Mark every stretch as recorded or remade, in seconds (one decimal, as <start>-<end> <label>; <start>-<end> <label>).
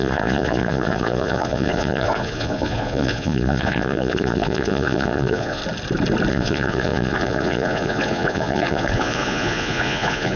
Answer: 0.0-5.6 remade; 5.6-6.3 recorded; 6.3-10.4 remade